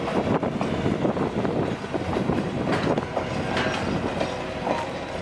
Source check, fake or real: real